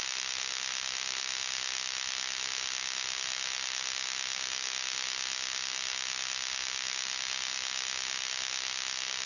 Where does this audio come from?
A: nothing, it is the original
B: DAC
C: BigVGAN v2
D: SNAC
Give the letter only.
A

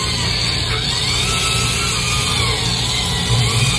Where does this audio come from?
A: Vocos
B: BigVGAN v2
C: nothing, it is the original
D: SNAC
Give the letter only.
C